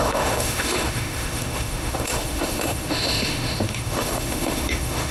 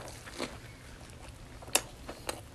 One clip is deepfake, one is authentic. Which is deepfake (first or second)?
first